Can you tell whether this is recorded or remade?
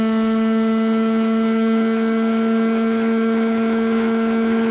remade